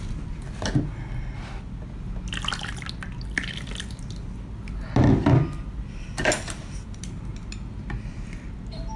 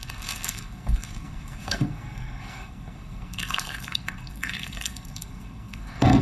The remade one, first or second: second